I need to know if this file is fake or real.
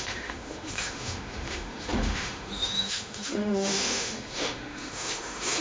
fake